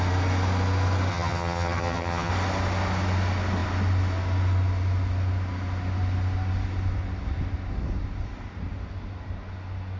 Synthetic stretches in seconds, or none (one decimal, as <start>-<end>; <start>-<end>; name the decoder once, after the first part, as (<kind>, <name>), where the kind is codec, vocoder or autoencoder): 1.1-2.3 (vocoder, HiFi-GAN)